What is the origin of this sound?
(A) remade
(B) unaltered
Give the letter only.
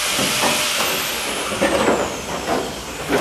B